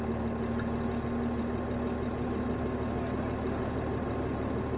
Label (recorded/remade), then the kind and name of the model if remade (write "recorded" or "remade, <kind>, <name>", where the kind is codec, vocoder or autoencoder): recorded